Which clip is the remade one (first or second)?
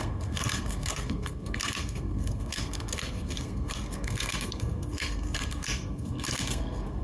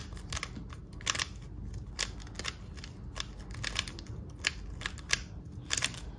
first